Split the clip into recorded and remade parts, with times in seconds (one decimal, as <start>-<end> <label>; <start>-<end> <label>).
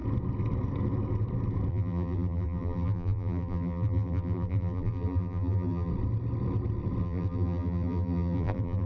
0.0-1.7 recorded; 1.7-5.9 remade; 5.9-7.0 recorded; 7.0-8.9 remade